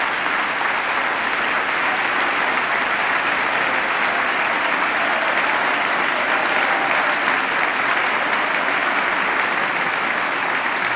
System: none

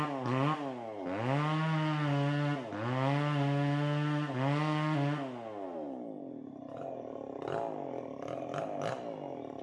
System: none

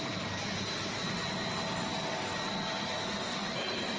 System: none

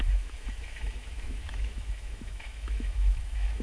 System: autoencoder, DAC-VAE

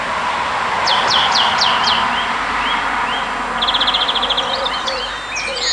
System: none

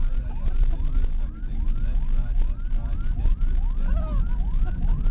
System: none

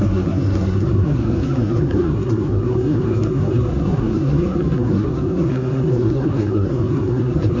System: codec, SNAC